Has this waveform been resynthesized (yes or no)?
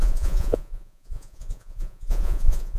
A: yes